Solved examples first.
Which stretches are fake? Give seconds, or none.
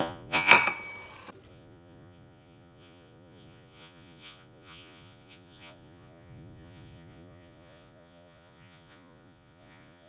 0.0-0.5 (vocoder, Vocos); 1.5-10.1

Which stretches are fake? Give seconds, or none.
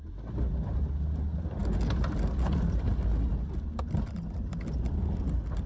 none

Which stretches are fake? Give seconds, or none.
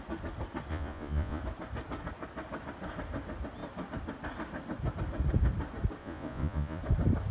0.7-1.4 (vocoder, Vocos); 6.0-6.8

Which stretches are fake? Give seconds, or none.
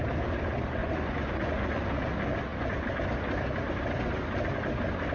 0.8-1.8 (vocoder, Vocos)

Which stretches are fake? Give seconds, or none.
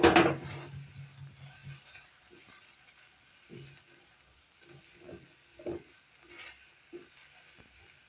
none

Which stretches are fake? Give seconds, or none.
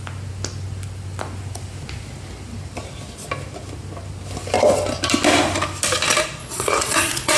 6.4-7.4 (vocoder, Vocos)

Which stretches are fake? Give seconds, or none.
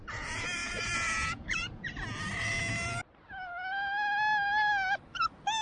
0.6-1.9 (vocoder, Vocos)